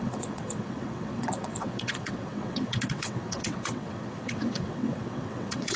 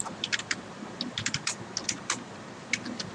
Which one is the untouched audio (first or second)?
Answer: second